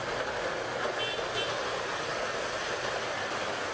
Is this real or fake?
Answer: real